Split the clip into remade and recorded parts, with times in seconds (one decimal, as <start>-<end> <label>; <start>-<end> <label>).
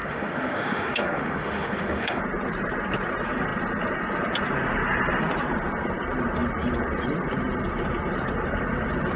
0.0-2.2 remade; 2.2-9.2 recorded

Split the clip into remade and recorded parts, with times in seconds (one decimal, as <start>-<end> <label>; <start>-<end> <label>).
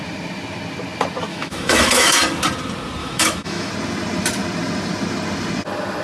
0.0-1.3 recorded; 1.3-2.2 remade; 2.2-3.0 recorded; 3.0-3.7 remade; 3.7-6.0 recorded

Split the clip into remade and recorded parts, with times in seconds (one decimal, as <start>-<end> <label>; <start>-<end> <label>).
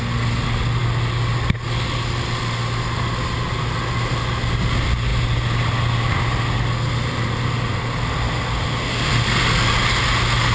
0.0-10.5 recorded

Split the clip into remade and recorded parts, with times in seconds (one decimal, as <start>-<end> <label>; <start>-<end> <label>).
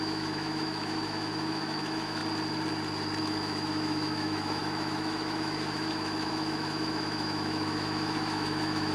0.0-2.2 remade; 2.2-3.2 recorded; 3.2-8.9 remade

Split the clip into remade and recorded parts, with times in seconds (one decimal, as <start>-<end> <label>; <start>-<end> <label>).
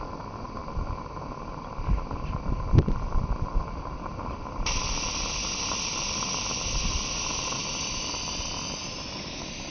0.0-9.7 recorded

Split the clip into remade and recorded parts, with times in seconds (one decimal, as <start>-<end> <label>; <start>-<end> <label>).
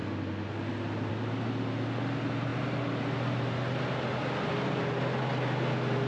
0.0-6.1 recorded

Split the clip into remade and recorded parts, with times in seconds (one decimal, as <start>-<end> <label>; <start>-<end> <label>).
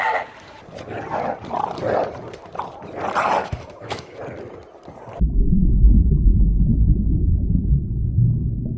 0.0-3.4 recorded; 3.4-4.2 remade; 4.2-8.8 recorded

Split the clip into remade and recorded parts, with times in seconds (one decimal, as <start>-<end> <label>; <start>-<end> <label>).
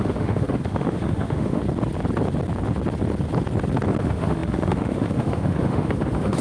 0.0-1.6 remade; 1.6-4.0 recorded; 4.0-6.4 remade